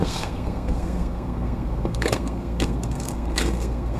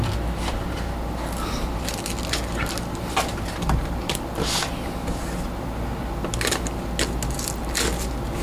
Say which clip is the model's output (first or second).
first